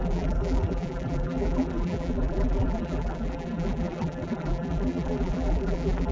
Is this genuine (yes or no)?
no